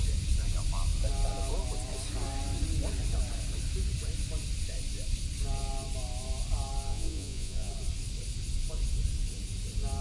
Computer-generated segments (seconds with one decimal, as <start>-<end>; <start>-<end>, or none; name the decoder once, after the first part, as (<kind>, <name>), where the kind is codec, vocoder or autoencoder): 6.9-7.7 (vocoder, Vocos)